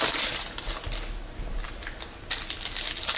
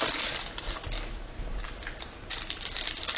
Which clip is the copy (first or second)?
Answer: second